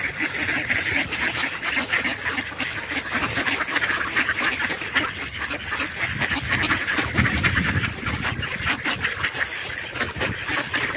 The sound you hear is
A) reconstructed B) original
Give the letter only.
A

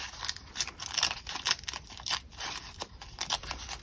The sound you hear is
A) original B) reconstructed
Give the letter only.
B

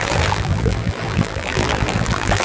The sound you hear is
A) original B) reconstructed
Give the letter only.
B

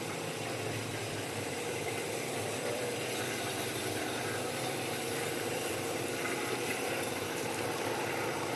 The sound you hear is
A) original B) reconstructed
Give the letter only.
B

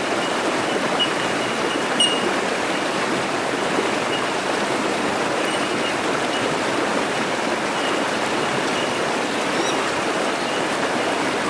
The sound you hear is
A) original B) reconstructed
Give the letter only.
B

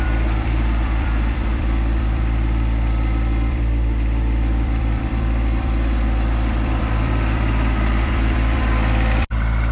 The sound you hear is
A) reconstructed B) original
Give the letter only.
A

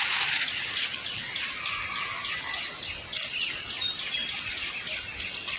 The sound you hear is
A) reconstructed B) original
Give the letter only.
B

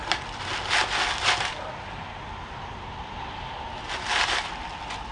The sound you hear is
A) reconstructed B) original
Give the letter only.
B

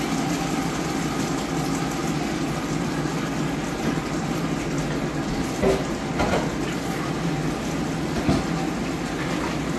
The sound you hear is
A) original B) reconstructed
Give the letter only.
A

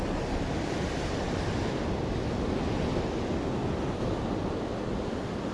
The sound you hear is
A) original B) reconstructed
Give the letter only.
A